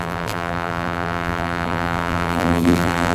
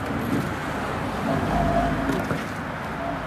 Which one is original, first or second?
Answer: second